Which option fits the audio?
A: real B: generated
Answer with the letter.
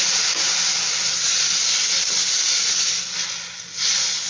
A